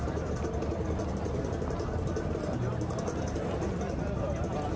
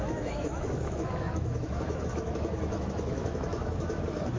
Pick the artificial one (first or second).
second